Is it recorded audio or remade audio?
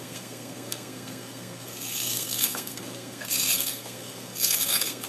remade